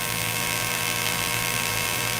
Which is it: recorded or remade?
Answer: remade